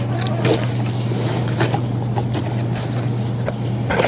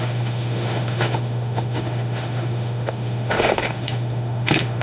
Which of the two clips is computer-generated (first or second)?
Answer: second